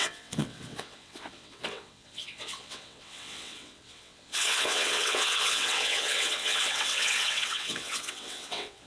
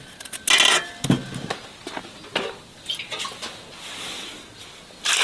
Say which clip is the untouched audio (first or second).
second